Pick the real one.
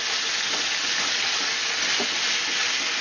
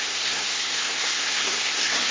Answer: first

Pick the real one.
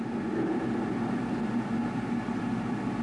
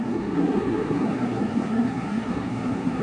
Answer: first